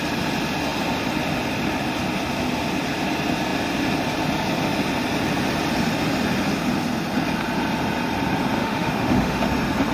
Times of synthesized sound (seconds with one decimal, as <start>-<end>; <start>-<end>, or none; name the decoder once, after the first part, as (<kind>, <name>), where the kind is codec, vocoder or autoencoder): 8.6-9.4 (autoencoder, DAC-VAE)